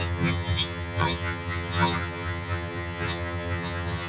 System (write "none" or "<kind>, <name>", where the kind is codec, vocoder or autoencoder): vocoder, HiFi-GAN